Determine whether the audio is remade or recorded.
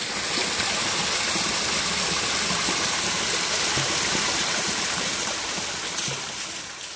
recorded